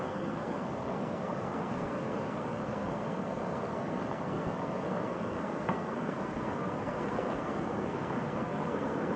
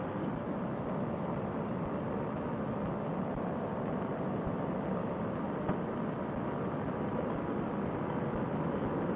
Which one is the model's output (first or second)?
first